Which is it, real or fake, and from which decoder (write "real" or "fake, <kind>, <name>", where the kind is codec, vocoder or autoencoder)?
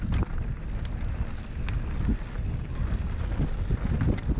real